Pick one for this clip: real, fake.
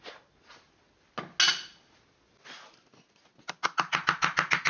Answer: real